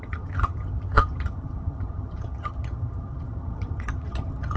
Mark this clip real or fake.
fake